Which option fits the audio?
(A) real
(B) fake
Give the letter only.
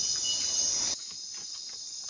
A